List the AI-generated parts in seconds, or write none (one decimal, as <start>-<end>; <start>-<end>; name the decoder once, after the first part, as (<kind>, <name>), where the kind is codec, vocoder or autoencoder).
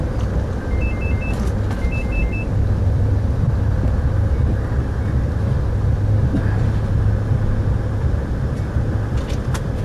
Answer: none